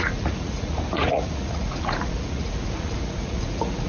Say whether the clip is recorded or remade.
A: remade